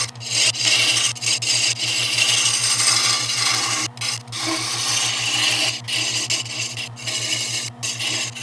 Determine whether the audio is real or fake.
real